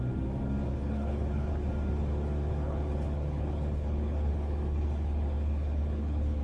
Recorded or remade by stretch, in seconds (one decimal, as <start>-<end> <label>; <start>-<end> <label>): 0.0-0.7 recorded; 0.7-1.5 remade; 1.5-2.5 recorded; 2.5-6.4 remade